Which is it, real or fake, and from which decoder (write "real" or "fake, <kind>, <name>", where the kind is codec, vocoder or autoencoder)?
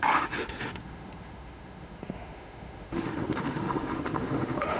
fake, autoencoder, DAC-VAE